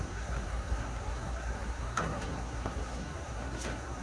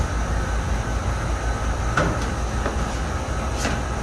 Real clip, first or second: second